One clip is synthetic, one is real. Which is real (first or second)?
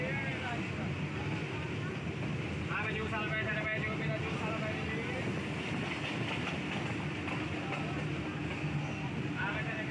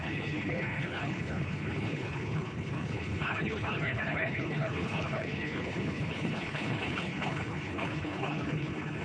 first